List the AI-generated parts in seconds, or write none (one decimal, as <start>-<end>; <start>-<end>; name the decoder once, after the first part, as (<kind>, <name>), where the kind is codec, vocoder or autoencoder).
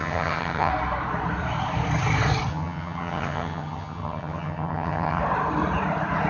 0.0-0.7 (vocoder, HiFi-GAN); 2.5-5.2